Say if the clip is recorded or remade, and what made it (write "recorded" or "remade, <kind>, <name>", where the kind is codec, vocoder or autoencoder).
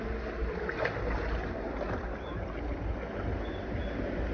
recorded